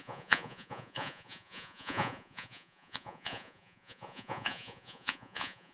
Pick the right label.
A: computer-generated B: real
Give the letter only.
A